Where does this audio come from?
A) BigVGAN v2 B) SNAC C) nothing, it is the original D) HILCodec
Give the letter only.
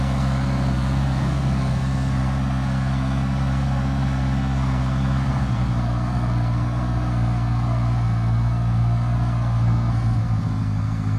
B